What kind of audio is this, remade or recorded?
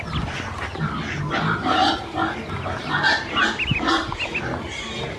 recorded